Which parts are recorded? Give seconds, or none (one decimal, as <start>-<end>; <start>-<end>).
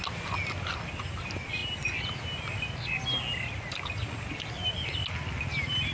0.0-5.9